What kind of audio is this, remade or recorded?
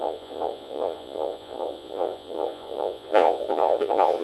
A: remade